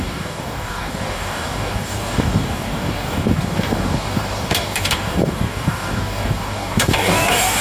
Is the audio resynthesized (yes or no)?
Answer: yes